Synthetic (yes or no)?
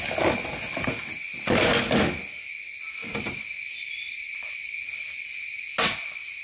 no